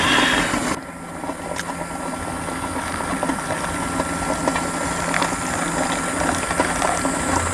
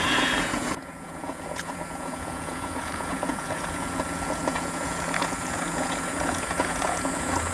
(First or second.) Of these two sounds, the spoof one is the second